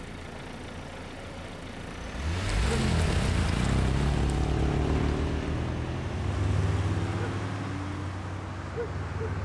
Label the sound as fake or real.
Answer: real